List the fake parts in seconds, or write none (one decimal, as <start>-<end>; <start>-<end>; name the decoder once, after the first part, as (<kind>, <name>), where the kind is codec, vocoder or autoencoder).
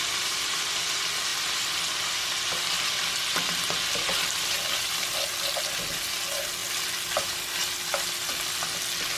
none